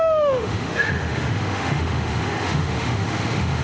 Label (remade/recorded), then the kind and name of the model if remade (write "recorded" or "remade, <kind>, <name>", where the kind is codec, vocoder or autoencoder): remade, autoencoder, DAC-VAE